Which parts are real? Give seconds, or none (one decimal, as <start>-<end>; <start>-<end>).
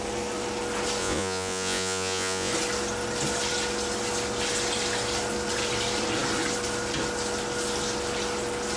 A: 0.0-1.0; 2.5-8.8